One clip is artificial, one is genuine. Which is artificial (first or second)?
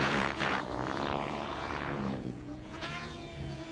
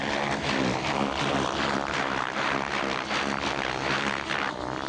first